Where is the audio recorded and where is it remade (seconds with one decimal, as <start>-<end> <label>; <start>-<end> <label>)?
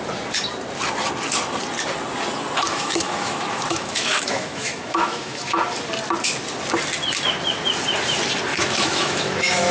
0.0-2.7 recorded; 2.7-5.6 remade; 5.6-8.5 recorded; 8.5-9.7 remade